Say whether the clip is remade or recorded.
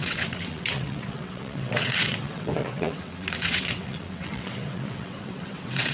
remade